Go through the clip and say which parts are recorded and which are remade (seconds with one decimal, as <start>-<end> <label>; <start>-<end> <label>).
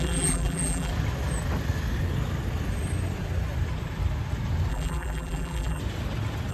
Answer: 0.0-0.9 remade; 0.9-4.7 recorded; 4.7-5.8 remade; 5.8-6.5 recorded